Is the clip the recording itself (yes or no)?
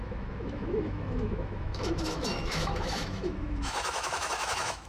no